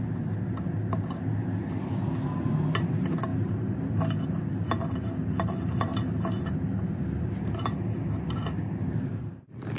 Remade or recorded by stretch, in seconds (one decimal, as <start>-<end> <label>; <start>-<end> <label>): 0.0-9.8 recorded